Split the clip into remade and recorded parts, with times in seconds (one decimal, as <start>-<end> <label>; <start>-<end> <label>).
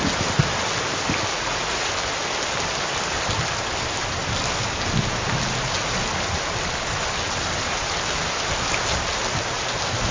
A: 0.0-1.3 recorded; 1.3-1.9 remade; 1.9-10.1 recorded